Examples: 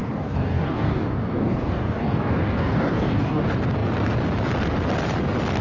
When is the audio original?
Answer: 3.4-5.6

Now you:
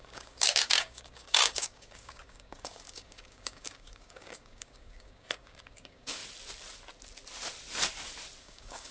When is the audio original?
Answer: 6.2-8.4

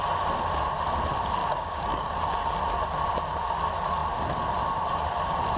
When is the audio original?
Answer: 0.0-1.4; 2.1-5.6

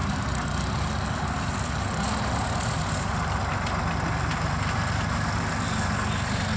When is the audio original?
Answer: 0.0-6.6

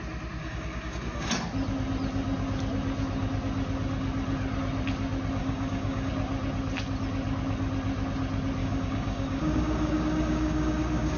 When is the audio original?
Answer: 0.0-0.4; 1.3-5.4; 6.1-8.6